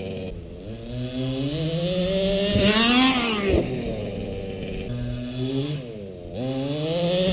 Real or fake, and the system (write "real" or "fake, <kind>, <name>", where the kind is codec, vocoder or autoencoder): real